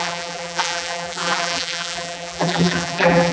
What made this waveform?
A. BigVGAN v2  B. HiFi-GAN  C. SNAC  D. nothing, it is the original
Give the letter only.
A